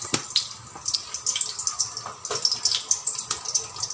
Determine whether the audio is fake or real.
real